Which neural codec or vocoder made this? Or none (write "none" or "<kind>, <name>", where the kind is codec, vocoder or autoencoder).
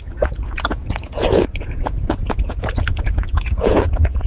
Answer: vocoder, Vocos